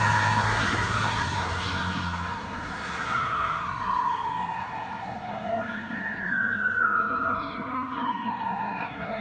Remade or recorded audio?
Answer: remade